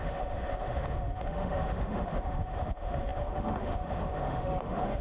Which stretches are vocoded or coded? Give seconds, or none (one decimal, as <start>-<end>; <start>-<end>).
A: 0.0-5.0